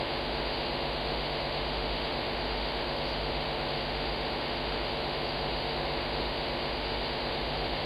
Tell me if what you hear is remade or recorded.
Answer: remade